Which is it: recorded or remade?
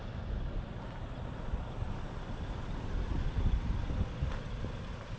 remade